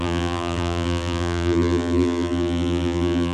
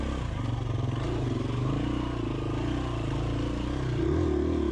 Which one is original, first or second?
second